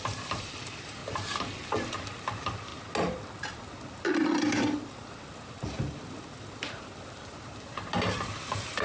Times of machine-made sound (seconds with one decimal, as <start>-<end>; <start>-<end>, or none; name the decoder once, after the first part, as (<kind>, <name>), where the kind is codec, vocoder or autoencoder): 0.0-1.0 (vocoder, BigVGAN v2); 1.7-2.7; 3.7-8.8